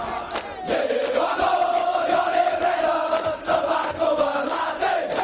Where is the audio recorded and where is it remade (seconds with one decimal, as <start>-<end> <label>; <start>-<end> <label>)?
0.0-1.8 recorded; 1.8-5.2 remade